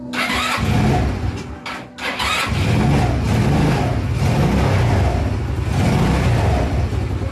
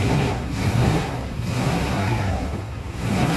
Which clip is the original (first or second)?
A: first